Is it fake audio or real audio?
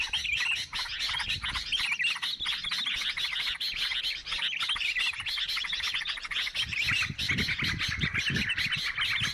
real